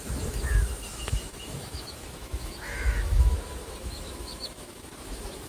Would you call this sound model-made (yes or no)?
yes